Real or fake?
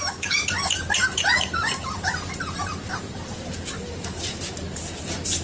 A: fake